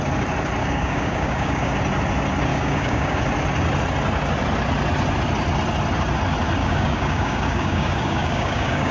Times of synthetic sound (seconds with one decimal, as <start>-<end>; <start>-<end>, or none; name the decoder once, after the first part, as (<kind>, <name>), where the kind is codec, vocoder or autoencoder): 0.6-1.7 (codec, DAC); 2.5-3.2; 6.6-8.9